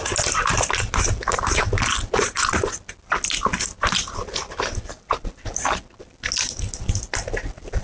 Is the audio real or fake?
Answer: real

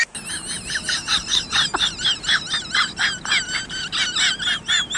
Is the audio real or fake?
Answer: real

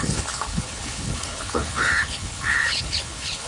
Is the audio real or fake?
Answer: fake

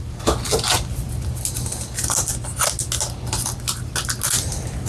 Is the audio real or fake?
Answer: real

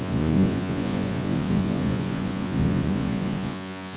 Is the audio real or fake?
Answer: fake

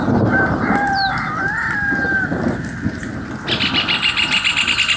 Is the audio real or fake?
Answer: real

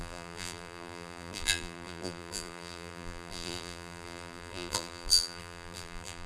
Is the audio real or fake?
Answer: fake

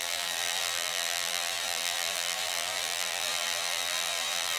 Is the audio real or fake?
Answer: fake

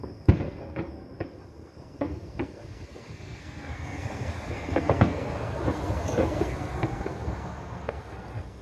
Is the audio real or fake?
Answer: fake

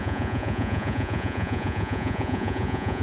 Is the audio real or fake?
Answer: fake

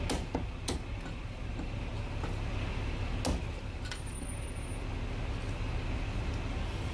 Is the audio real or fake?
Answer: real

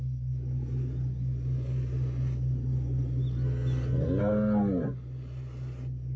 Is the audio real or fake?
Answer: real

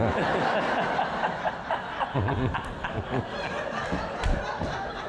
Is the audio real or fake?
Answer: real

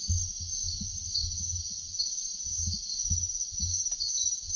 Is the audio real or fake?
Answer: real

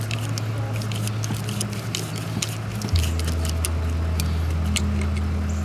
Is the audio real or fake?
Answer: real